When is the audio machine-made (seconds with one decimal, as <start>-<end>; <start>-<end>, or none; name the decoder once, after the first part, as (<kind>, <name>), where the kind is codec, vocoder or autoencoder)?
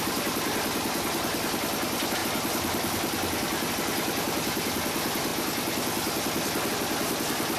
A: none